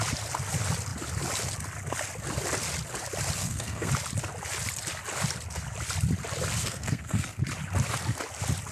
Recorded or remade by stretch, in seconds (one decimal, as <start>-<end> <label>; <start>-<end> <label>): 0.0-3.4 recorded; 3.4-3.9 remade; 3.9-6.6 recorded; 6.6-7.4 remade; 7.4-8.7 recorded